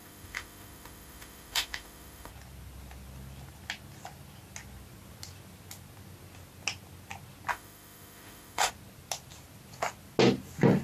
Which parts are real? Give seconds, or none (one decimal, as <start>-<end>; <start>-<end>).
2.3-7.5; 8.7-10.8